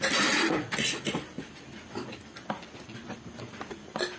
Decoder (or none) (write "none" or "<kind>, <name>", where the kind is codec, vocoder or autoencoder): none